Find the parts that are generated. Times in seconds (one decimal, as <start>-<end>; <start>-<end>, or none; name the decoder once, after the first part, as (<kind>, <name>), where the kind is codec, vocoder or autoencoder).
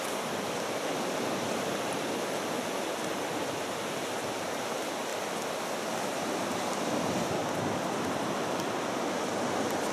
none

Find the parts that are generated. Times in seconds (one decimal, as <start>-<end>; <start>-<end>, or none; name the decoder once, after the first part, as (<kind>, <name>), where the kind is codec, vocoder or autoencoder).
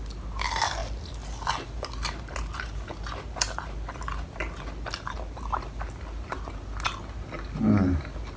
none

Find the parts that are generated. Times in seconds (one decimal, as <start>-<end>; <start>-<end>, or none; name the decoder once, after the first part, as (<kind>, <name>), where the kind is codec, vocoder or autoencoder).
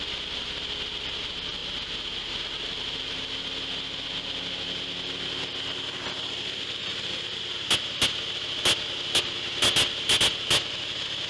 none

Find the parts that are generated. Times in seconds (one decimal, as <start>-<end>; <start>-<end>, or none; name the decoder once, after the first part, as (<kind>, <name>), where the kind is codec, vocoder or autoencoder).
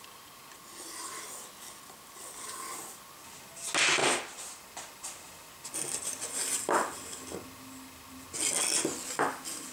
4.0-4.6 (vocoder, BigVGAN v2)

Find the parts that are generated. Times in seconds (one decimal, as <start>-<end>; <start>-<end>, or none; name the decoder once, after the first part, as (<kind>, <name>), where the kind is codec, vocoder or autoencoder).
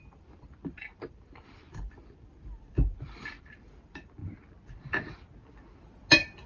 0.0-4.2 (vocoder, BigVGAN v2); 6.1-6.5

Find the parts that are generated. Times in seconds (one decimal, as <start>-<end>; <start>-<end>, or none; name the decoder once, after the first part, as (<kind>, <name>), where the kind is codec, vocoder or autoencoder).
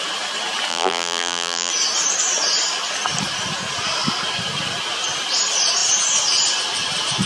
0.7-1.7 (vocoder, BigVGAN v2)